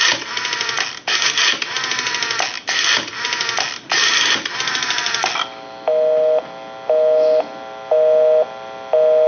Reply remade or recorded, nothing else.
recorded